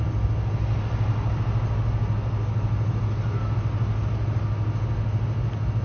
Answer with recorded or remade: recorded